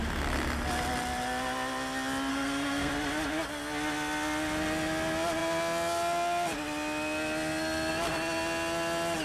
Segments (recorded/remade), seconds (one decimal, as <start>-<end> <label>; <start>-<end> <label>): 0.0-2.3 recorded; 2.3-2.9 remade; 2.9-9.2 recorded